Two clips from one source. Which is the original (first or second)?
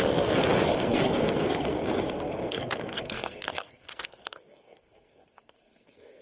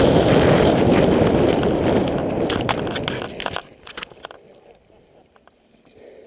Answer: second